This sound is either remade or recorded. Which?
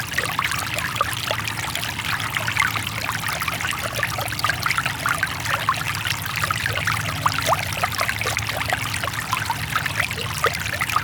recorded